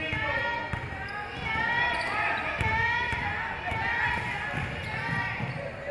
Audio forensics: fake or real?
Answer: real